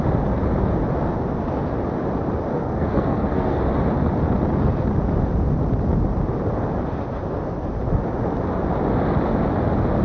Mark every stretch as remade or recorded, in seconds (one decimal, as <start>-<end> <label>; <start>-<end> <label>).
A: 0.0-2.5 recorded; 2.5-3.6 remade; 3.6-10.0 recorded